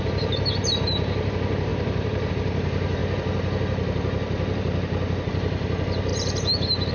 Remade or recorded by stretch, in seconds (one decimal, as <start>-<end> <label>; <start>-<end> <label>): 0.0-3.0 remade; 3.0-5.3 recorded; 5.3-6.1 remade; 6.1-6.9 recorded